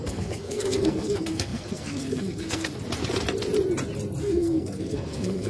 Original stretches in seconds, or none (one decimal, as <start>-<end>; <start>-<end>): 2.7-4.2